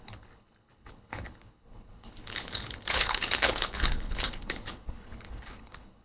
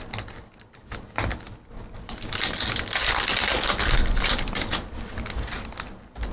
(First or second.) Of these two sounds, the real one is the second